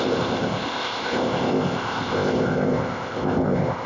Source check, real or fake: fake